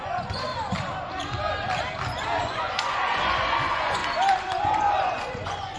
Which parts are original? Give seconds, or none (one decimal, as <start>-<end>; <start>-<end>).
0.5-2.4; 4.0-4.6